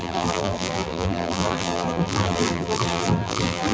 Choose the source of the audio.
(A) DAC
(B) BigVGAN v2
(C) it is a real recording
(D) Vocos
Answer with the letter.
B